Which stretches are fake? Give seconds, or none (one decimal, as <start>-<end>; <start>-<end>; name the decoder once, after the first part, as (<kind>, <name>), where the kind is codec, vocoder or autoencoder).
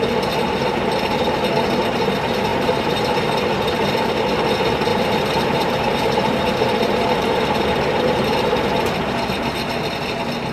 2.5-3.1 (vocoder, BigVGAN v2); 4.9-7.4